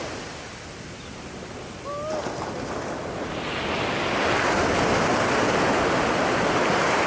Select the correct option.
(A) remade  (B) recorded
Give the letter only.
B